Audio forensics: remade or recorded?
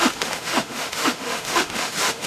remade